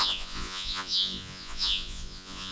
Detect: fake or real fake